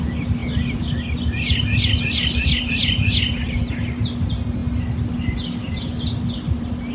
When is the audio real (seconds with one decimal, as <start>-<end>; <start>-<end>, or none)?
0.0-6.9